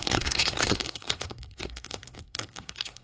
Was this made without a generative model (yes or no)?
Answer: no